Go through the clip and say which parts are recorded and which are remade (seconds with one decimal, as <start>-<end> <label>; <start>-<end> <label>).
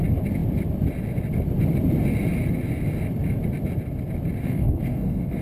0.0-4.4 recorded; 4.4-5.4 remade